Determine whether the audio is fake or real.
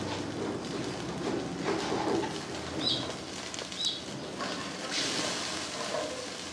real